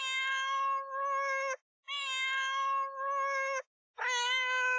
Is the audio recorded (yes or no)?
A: yes